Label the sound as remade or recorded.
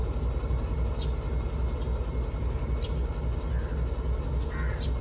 recorded